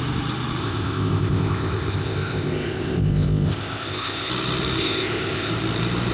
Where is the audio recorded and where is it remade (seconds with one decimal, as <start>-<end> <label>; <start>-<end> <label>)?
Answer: 0.0-0.6 recorded; 0.6-4.3 remade; 4.3-4.8 recorded; 4.8-5.5 remade; 5.5-6.1 recorded